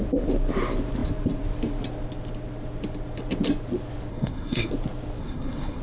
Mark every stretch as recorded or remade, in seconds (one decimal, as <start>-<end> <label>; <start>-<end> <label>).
0.0-4.1 recorded; 4.1-4.7 remade; 4.7-5.2 recorded; 5.2-5.8 remade